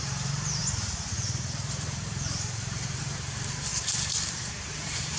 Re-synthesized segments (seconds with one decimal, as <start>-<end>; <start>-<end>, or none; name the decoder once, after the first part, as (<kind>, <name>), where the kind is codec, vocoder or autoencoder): 0.0-3.7 (vocoder, BigVGAN v2); 4.7-5.2